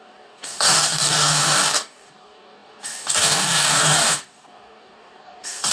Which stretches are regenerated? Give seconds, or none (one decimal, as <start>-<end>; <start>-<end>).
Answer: 0.0-5.7